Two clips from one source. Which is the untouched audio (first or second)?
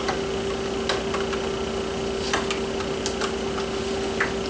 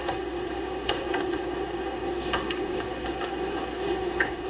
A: first